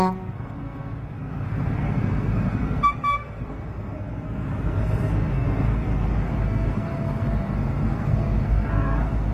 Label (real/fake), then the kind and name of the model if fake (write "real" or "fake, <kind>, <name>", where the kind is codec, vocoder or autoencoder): fake, codec, SNAC